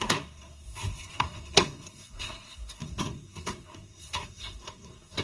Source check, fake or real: fake